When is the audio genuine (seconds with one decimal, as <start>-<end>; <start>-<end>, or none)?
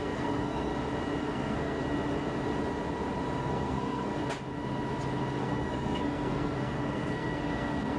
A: 0.7-1.2; 1.8-3.4; 4.1-5.4